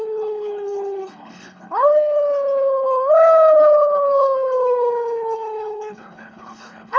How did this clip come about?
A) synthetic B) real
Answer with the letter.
A